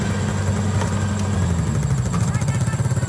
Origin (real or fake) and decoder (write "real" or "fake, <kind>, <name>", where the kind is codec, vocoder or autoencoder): real